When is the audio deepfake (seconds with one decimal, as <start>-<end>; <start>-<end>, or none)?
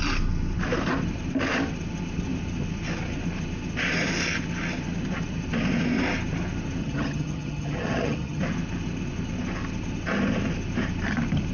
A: 6.8-8.4